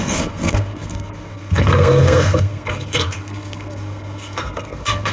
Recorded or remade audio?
remade